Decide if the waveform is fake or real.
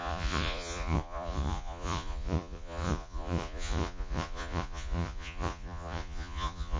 fake